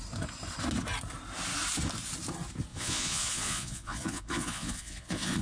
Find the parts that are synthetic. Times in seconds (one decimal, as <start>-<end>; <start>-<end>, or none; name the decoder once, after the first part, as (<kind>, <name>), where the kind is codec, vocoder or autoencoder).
2.7-5.4 (vocoder, Vocos)